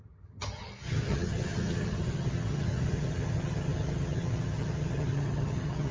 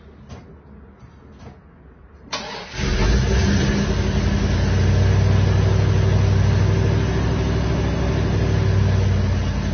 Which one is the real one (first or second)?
second